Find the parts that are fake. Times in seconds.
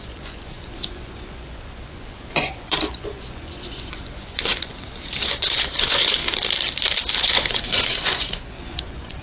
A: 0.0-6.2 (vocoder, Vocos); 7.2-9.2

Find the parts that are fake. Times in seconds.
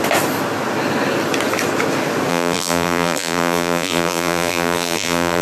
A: 2.3-5.4 (vocoder, BigVGAN v2)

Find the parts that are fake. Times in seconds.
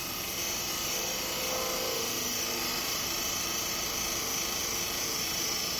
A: 0.0-0.7 (vocoder, BigVGAN v2); 2.7-3.7; 4.6-5.8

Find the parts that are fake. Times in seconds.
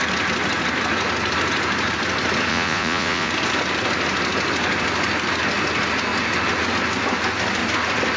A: 2.5-3.3 (vocoder, Vocos)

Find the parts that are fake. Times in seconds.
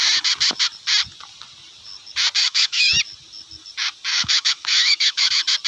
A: 2.4-3.0 (autoencoder, DAC-VAE); 4.1-5.3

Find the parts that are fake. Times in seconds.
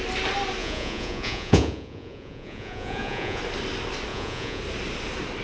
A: 0.6-3.4 (vocoder, Vocos); 4.1-4.6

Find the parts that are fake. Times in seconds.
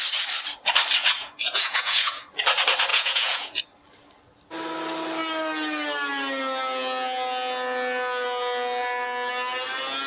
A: 1.0-2.2 (vocoder, Vocos); 2.9-3.6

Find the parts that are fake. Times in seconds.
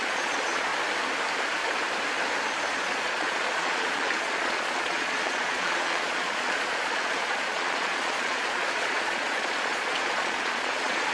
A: 0.0-0.7 (vocoder, Vocos); 2.7-11.1